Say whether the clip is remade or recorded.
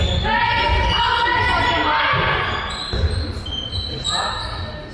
recorded